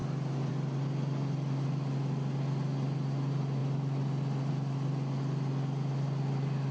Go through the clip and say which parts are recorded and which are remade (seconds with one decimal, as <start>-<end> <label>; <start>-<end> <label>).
0.0-6.7 recorded